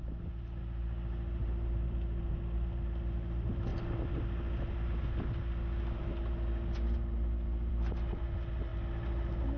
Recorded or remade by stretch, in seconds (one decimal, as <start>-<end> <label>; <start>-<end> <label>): 0.0-9.6 recorded